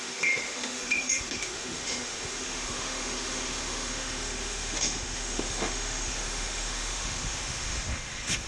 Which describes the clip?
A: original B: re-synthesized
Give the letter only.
B